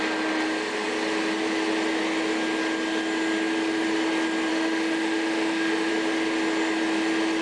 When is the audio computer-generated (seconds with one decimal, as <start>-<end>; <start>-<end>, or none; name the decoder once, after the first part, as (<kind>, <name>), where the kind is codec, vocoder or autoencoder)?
4.5-5.9 (autoencoder, DAC-VAE)